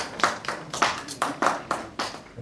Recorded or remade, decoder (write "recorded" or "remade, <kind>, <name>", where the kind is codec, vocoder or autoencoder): remade, vocoder, BigVGAN v2